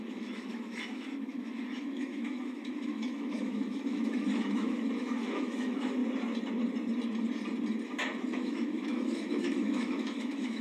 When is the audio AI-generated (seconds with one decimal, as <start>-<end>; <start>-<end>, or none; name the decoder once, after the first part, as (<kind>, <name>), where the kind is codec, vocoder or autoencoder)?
0.0-6.0 (autoencoder, DAC-VAE); 8.2-10.6